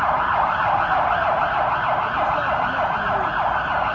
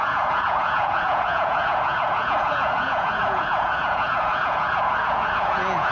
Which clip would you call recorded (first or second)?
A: first